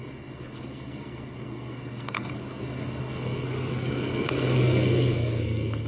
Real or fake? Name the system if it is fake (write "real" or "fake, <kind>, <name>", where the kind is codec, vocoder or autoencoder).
fake, codec, SNAC